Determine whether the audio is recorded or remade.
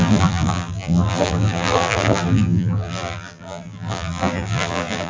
remade